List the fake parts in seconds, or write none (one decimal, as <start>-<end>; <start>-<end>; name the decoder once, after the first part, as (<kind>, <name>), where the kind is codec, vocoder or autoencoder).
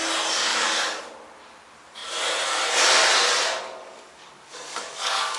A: 0.5-1.0 (codec, DAC); 3.8-5.4